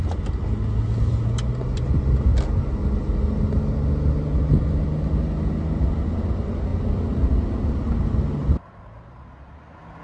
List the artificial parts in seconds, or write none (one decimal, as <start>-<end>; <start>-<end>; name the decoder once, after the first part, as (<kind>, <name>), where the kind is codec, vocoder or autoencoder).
none